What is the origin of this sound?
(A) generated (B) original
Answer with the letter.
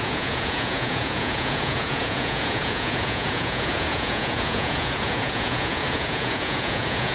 A